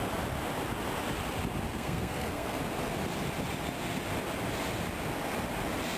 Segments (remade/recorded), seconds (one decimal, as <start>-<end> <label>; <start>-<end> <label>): 0.0-1.7 recorded; 1.7-2.6 remade; 2.6-6.0 recorded